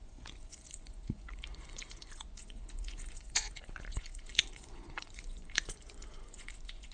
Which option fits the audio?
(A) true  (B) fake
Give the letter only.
B